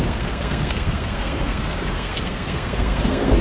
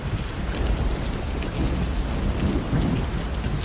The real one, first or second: second